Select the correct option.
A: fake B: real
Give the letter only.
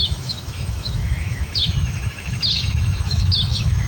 A